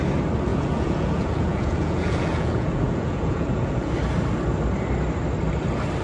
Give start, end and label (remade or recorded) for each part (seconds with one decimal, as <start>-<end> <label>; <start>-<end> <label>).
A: 0.0-0.5 recorded; 0.5-3.9 remade; 3.9-6.0 recorded